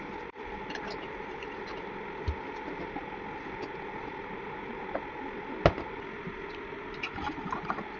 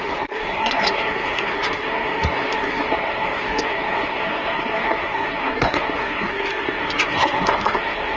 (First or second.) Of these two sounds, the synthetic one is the second